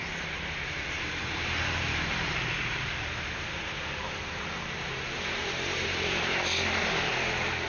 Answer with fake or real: fake